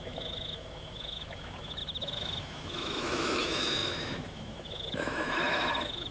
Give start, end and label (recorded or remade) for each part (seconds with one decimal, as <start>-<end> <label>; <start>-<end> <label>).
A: 0.0-6.1 remade